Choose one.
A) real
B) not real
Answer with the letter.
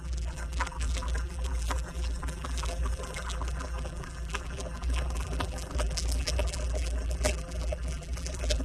B